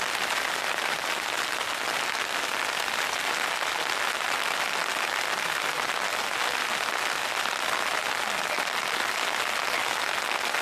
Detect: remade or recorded recorded